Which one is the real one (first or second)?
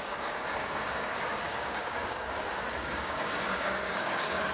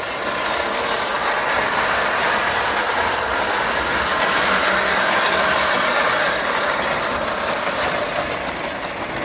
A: second